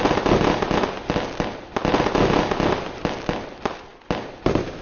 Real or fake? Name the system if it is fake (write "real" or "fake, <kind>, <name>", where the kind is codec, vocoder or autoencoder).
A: real